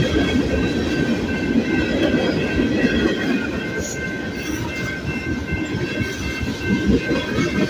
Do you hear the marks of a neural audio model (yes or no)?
no